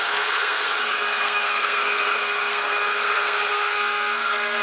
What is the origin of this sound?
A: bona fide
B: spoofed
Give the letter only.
B